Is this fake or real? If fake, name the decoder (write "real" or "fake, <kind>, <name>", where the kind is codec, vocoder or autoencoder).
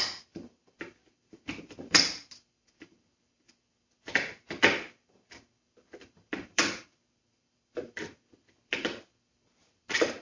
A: fake, vocoder, BigVGAN v2